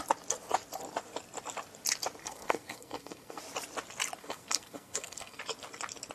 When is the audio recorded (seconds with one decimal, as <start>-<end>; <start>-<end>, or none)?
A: 0.0-2.2; 3.4-4.2; 5.4-6.1